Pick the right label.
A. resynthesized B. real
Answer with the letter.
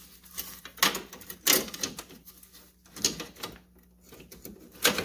B